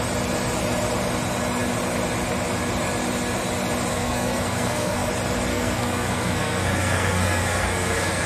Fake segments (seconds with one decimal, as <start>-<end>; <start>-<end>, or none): 3.9-5.1; 5.5-8.3